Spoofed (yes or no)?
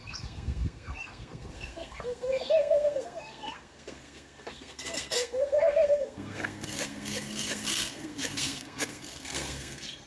yes